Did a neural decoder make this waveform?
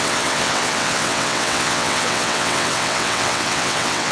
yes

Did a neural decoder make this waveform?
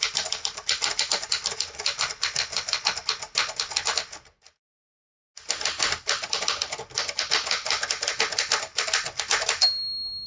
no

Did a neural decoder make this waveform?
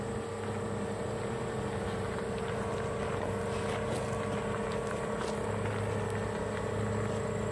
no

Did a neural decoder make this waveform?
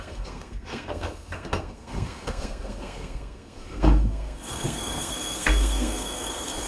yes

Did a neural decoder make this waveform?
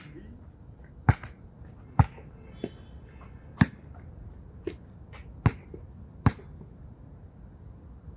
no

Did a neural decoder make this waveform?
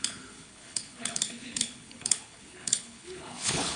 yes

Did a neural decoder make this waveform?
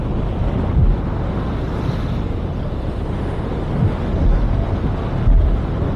no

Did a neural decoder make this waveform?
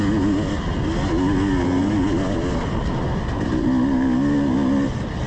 no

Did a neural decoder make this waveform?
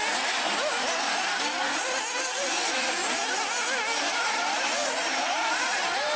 no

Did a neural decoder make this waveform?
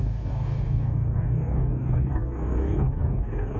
yes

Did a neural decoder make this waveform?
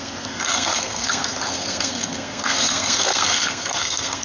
yes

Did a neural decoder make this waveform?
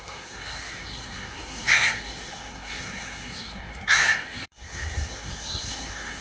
yes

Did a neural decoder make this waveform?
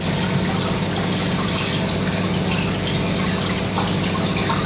no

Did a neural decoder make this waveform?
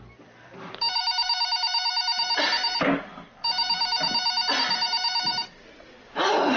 yes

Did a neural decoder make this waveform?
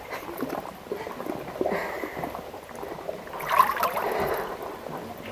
no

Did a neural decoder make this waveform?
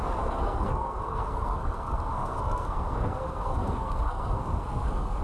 yes